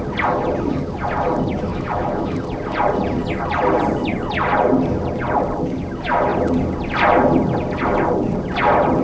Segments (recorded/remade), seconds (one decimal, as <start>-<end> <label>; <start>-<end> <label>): 0.0-1.7 recorded; 1.7-2.4 remade; 2.4-9.0 recorded